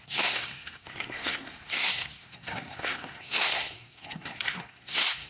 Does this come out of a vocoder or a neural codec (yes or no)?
yes